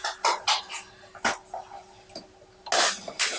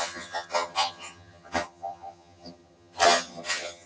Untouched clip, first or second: first